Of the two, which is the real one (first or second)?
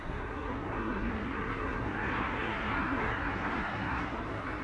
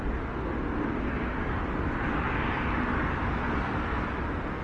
second